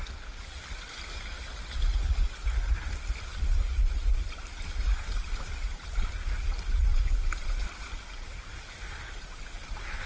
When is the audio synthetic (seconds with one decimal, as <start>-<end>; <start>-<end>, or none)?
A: 6.9-8.5